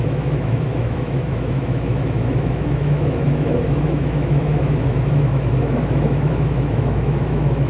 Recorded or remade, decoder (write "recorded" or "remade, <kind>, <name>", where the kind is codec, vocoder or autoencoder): remade, autoencoder, DAC-VAE